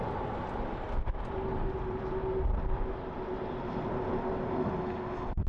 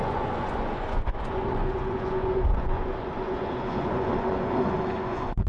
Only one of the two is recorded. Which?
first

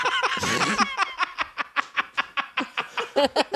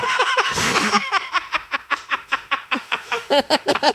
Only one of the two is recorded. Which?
first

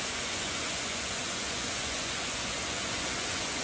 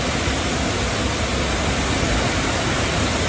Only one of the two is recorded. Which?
second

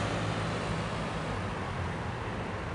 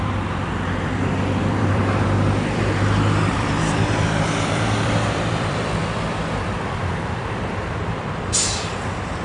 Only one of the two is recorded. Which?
first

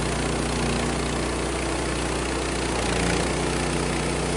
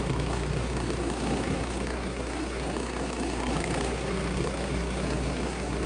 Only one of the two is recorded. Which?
first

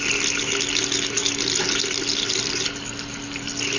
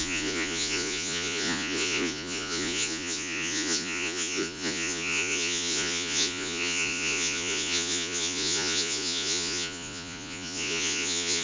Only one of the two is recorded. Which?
first